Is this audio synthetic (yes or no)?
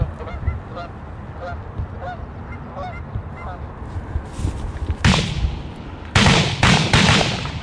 no